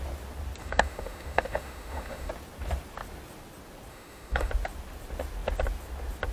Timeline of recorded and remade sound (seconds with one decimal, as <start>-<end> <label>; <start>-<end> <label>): 0.0-0.6 recorded; 0.6-2.3 remade; 2.3-3.9 recorded; 3.9-4.5 remade; 4.5-6.3 recorded